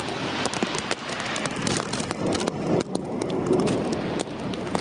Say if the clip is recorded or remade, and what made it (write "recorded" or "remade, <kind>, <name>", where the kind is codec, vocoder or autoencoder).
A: recorded